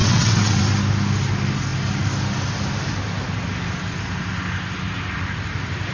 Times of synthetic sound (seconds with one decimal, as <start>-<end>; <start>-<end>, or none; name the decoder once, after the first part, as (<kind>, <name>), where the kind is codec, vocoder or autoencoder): 0.0-0.6 (vocoder, WaveNeXt)